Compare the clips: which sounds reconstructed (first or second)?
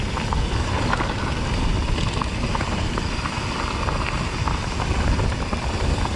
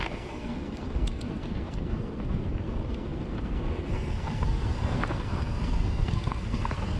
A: second